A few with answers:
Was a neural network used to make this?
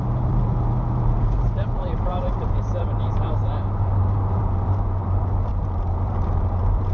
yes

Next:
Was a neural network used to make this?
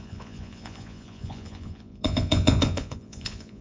yes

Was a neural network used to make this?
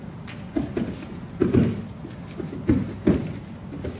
no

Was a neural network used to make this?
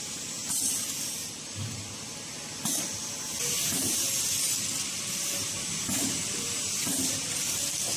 no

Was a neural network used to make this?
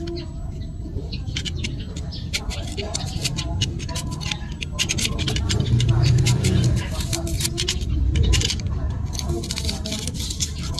no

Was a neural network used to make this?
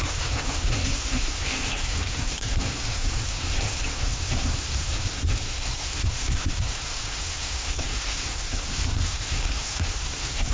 yes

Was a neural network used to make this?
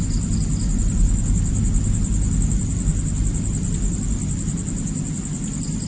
no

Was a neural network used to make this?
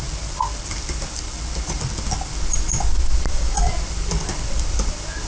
no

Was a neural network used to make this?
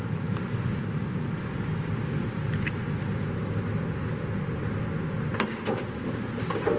no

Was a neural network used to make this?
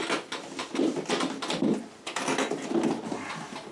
no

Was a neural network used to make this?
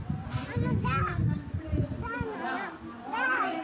no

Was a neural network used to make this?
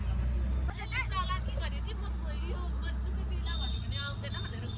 no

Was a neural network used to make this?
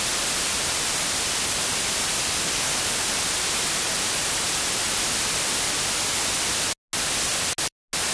no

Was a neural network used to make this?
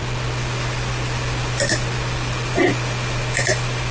no